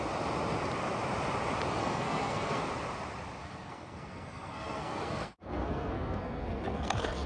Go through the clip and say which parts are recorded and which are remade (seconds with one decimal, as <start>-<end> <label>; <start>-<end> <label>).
0.0-1.8 recorded; 1.8-2.6 remade; 2.6-3.4 recorded; 3.4-7.3 remade